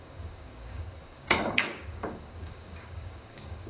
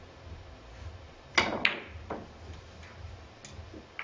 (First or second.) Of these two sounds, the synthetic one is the first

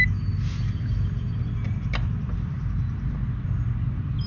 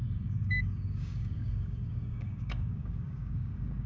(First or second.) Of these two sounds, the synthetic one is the second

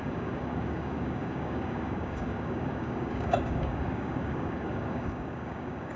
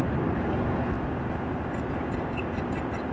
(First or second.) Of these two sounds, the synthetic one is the first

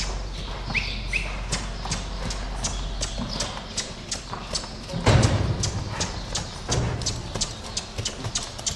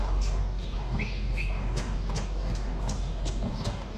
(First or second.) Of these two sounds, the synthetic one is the second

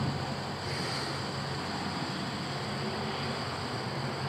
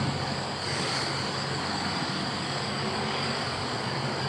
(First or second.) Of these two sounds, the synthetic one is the second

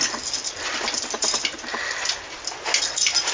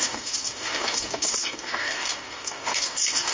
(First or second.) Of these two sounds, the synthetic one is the second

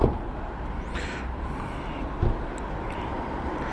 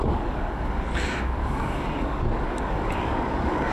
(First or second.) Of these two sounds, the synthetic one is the second